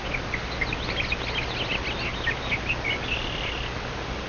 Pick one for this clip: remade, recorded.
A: recorded